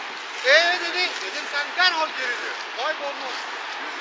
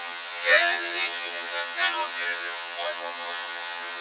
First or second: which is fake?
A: second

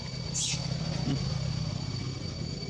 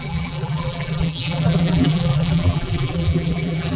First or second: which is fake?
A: second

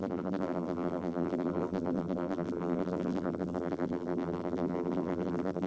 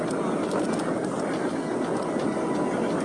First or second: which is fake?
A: first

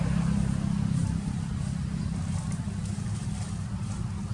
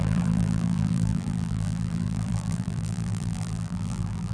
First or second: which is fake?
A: second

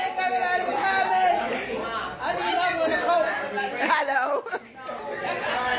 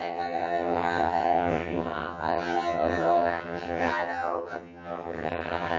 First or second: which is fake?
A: second